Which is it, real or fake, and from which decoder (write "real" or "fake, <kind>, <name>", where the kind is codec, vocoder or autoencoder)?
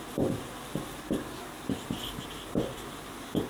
real